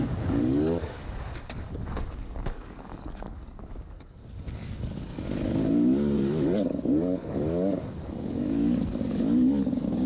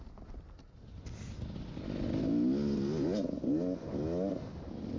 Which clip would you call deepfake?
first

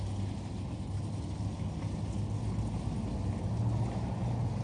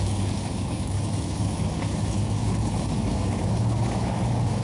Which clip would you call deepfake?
second